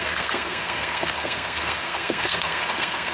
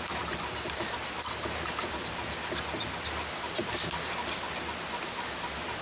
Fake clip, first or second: first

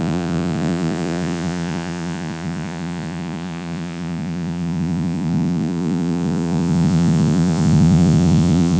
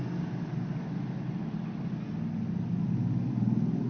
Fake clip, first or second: first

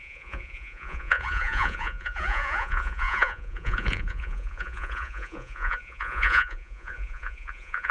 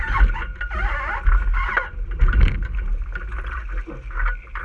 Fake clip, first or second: first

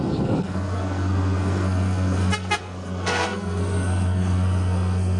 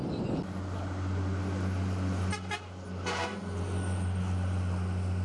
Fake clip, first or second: first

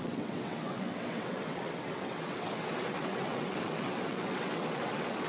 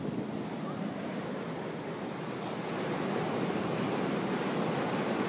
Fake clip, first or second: first